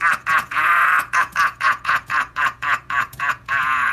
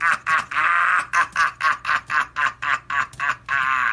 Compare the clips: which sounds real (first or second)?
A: second